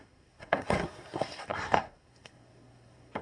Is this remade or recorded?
remade